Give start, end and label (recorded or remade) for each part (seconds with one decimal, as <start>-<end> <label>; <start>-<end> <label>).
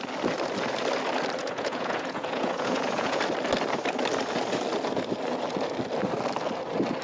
0.0-1.4 recorded; 1.4-3.2 remade; 3.2-7.0 recorded